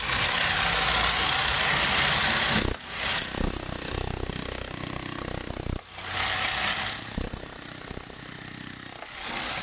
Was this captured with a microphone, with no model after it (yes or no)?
yes